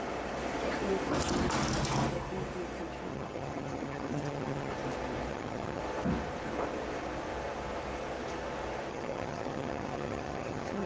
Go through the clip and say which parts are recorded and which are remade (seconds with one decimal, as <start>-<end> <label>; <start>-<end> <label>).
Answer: 0.0-3.1 recorded; 3.1-4.7 remade; 4.7-5.3 recorded; 5.3-5.8 remade; 5.8-8.9 recorded; 8.9-10.9 remade